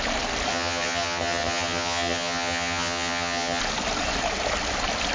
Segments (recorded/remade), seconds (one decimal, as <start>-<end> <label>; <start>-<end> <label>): 0.0-0.5 recorded; 0.5-3.6 remade; 3.6-5.1 recorded